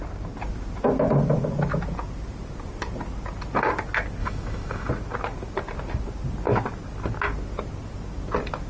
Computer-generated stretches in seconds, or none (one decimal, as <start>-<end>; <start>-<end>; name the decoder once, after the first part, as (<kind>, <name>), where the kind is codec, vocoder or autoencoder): 4.2-4.9 (autoencoder, DAC-VAE)